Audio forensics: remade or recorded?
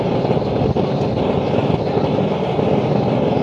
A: recorded